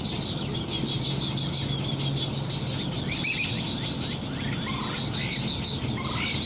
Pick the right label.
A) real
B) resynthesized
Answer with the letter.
A